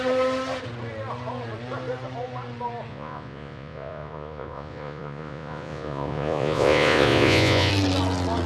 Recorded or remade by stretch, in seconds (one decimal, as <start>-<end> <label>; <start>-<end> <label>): 0.0-2.9 recorded; 2.9-7.7 remade; 7.7-8.5 recorded